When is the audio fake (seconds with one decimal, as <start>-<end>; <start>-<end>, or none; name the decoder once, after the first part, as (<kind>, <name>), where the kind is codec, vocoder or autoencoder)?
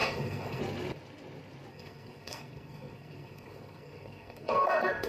0.0-0.6 (codec, SNAC); 1.7-5.1